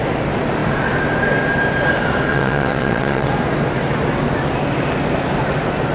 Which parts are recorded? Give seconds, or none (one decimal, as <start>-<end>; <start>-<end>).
0.0-2.3; 3.3-5.9